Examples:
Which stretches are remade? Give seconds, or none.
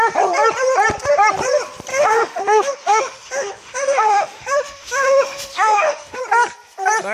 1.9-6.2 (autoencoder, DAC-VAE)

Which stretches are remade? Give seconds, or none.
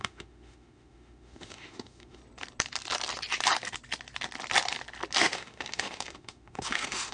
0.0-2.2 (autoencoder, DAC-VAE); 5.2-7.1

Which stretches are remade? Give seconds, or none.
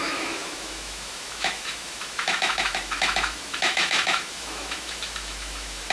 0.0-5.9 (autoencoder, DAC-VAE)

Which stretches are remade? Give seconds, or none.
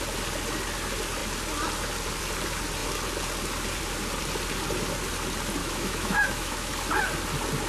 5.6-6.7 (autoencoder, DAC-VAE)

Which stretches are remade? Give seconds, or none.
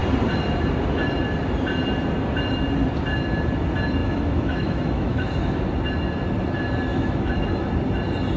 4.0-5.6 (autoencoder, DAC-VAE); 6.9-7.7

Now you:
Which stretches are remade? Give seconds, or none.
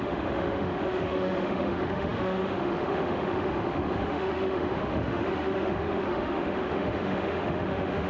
0.0-8.1 (autoencoder, DAC-VAE)